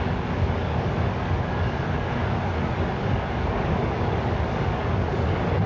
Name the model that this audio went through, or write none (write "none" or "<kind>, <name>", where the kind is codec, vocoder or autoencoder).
codec, DAC